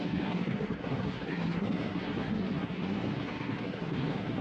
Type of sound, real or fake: fake